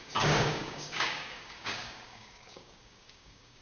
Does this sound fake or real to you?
fake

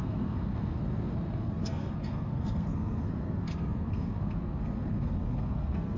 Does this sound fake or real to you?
fake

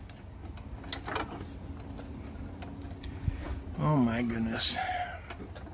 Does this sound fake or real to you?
real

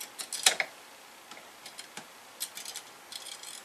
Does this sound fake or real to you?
real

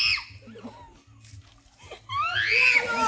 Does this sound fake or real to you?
real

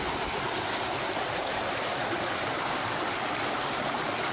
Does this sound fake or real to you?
real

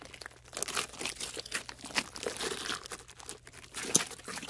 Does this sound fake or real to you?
real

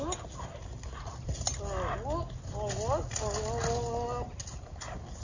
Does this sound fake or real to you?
real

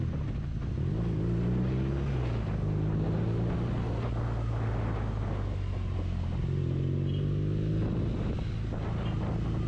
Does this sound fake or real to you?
real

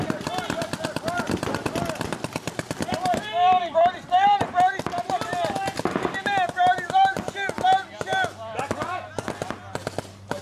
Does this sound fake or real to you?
real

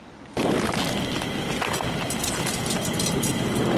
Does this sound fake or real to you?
real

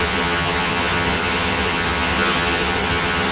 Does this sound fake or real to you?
fake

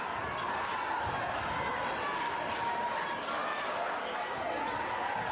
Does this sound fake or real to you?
real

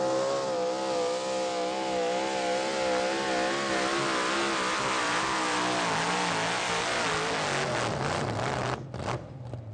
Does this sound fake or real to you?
real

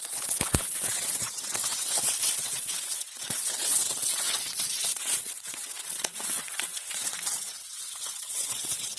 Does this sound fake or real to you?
fake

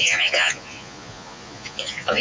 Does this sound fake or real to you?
fake